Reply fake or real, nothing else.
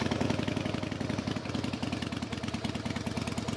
real